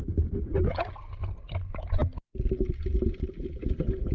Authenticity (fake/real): real